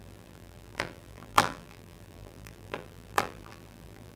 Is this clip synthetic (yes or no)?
yes